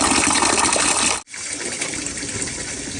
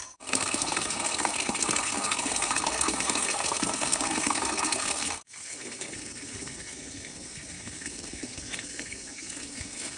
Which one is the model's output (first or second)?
second